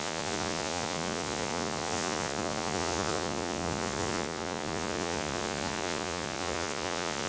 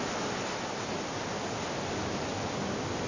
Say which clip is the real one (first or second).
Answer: second